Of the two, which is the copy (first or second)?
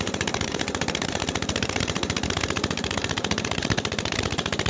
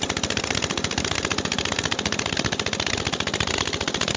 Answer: first